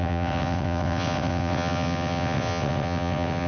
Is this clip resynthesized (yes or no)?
yes